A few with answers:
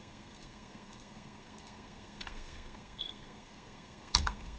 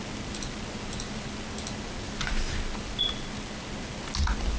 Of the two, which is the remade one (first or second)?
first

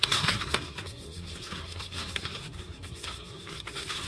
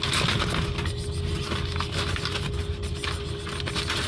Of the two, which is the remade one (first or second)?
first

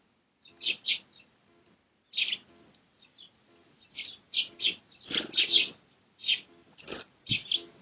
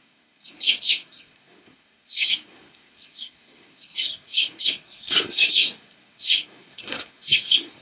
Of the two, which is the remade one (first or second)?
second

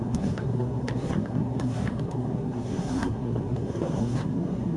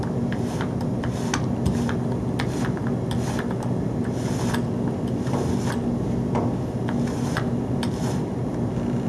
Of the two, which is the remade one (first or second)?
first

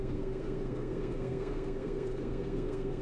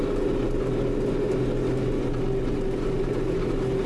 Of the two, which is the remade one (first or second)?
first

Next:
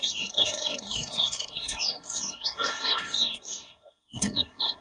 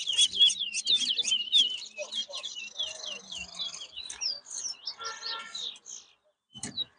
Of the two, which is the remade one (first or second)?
first